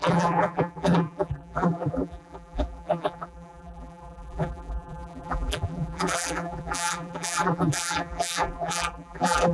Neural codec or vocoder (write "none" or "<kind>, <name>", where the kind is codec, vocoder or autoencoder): vocoder, BigVGAN v2